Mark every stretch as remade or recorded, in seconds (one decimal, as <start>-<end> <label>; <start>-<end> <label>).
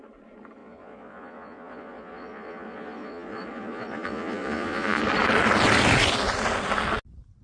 0.0-0.6 recorded; 0.6-5.0 remade; 5.0-7.4 recorded